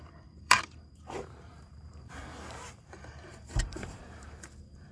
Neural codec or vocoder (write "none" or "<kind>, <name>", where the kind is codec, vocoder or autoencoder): vocoder, BigVGAN v2